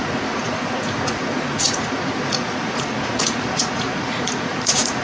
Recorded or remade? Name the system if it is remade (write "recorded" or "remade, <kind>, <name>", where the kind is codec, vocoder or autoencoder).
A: remade, vocoder, Vocos